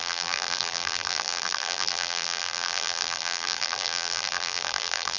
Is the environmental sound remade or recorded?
remade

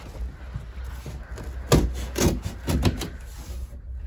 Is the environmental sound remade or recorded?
recorded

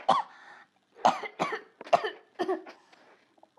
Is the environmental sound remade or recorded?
recorded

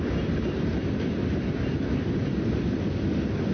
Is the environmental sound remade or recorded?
recorded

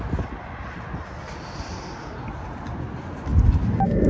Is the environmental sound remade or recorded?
recorded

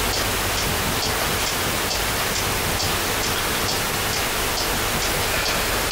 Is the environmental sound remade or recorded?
recorded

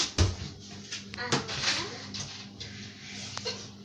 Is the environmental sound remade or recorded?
recorded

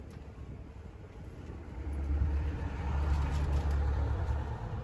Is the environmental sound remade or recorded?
remade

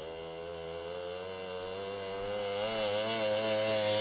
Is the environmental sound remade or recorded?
recorded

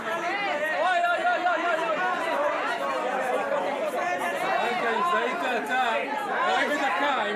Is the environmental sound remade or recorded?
recorded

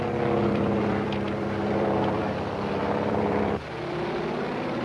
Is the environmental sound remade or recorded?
remade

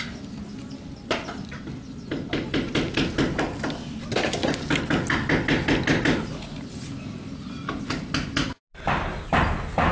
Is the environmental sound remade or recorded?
recorded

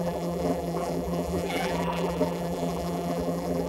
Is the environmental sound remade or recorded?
remade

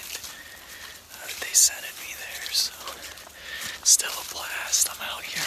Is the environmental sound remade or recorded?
recorded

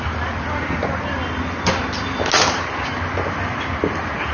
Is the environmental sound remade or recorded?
recorded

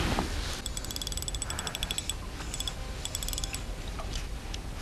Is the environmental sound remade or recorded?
recorded